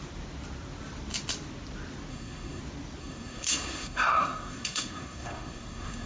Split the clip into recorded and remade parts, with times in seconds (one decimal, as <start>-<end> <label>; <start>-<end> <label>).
0.0-2.1 recorded; 2.1-2.6 remade; 2.6-3.0 recorded; 3.0-6.1 remade